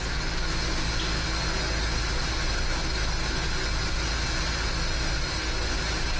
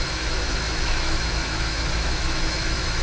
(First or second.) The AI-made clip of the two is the second